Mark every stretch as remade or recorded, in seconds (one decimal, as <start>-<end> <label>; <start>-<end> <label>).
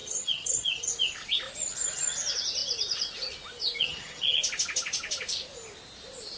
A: 0.0-0.9 remade; 0.9-3.8 recorded; 3.8-4.4 remade; 4.4-6.4 recorded